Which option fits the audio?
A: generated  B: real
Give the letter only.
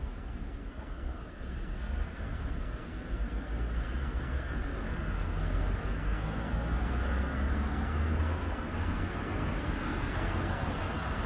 A